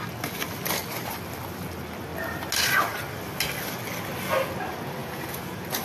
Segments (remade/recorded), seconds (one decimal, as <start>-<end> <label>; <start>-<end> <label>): 0.0-5.0 recorded; 5.0-5.8 remade